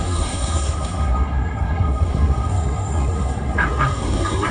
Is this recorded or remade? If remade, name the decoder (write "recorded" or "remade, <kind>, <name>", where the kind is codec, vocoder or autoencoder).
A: remade, codec, SNAC